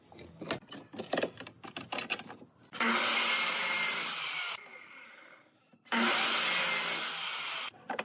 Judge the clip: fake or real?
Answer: real